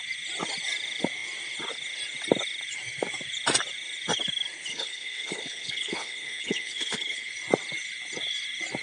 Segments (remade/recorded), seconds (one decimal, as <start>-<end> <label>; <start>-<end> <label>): 0.0-4.7 recorded; 4.7-7.3 remade; 7.3-8.8 recorded